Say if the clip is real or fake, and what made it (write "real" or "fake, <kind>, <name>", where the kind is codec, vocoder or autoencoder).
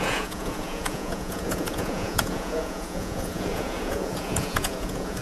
fake, vocoder, Vocos